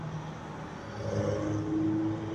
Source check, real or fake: real